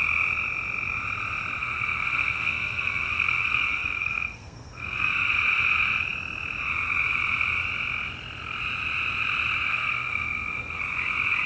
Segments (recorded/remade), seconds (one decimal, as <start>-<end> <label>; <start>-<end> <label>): 0.0-1.6 recorded; 1.6-5.3 remade; 5.3-9.7 recorded; 9.7-10.8 remade; 10.8-11.5 recorded